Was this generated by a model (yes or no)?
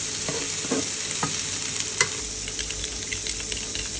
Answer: no